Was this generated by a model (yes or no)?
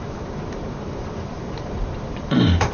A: yes